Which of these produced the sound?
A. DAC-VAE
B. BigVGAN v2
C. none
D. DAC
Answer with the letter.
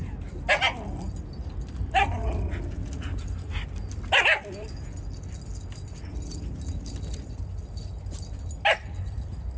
C